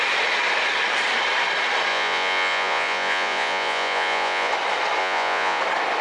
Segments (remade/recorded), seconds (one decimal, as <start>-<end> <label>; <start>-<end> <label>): 0.0-1.9 recorded; 1.9-4.5 remade; 4.5-5.0 recorded; 5.0-5.6 remade; 5.6-6.0 recorded